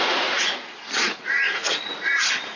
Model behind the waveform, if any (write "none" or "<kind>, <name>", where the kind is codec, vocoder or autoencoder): vocoder, Vocos